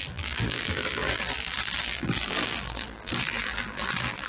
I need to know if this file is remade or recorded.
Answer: remade